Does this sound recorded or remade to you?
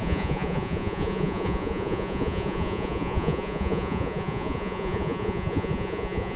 remade